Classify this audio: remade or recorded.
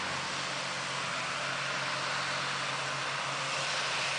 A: recorded